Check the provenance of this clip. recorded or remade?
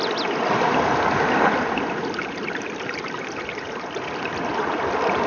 recorded